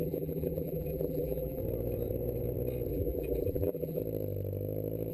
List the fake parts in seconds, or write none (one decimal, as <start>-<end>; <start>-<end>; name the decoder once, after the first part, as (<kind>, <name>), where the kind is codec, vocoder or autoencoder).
0.0-1.6 (vocoder, BigVGAN v2); 2.9-4.0